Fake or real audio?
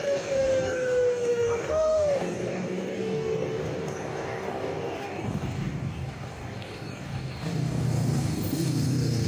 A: fake